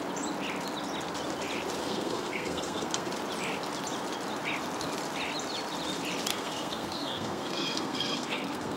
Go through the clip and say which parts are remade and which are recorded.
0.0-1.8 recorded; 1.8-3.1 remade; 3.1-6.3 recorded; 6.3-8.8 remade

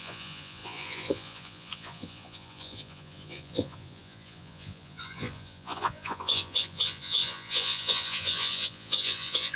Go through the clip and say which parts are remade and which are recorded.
0.0-9.6 remade

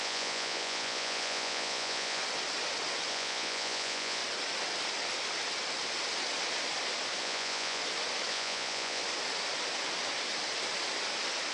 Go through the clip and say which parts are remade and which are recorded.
0.0-2.2 remade; 2.2-3.1 recorded; 3.1-4.2 remade; 4.2-7.2 recorded; 7.2-7.8 remade; 7.8-8.3 recorded; 8.3-9.0 remade; 9.0-11.5 recorded

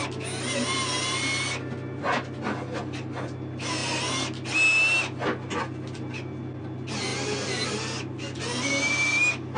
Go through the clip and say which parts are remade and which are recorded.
0.0-9.6 recorded

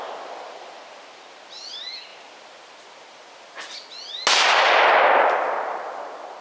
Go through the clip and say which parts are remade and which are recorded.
0.0-6.4 recorded

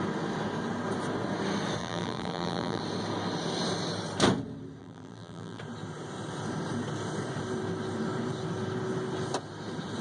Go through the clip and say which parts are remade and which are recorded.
0.0-1.8 recorded; 1.8-2.8 remade; 2.8-4.8 recorded; 4.8-5.6 remade; 5.6-10.0 recorded

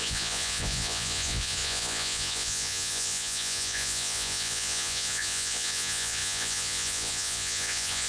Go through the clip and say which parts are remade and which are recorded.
0.0-8.1 remade